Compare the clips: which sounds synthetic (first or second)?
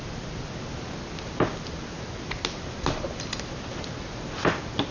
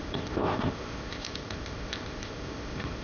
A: second